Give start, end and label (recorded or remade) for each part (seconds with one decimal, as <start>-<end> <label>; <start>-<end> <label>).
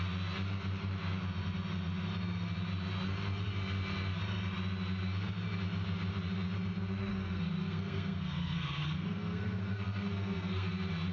0.0-7.1 recorded; 7.1-10.7 remade; 10.7-11.1 recorded